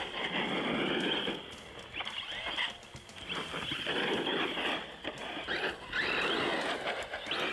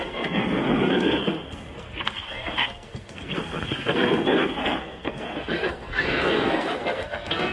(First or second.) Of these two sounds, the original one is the first